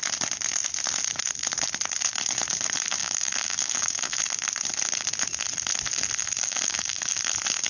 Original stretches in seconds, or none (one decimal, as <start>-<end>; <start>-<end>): 0.0-3.0; 4.2-6.2; 7.2-7.7